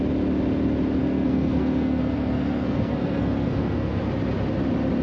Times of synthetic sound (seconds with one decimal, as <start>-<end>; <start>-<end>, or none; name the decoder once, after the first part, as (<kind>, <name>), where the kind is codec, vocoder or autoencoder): 1.0-4.0 (codec, SNAC)